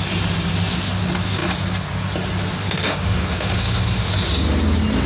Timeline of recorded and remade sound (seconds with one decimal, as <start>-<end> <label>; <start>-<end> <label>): 0.0-2.6 recorded; 2.6-4.1 remade; 4.1-5.1 recorded